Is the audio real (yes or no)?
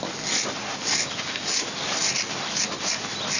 yes